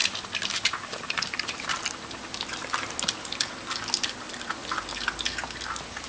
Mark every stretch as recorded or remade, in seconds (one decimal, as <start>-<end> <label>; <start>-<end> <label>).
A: 0.0-6.1 recorded